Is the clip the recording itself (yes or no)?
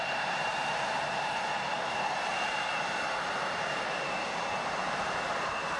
no